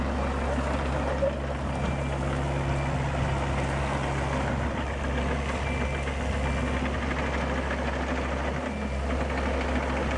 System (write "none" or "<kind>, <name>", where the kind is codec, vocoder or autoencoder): none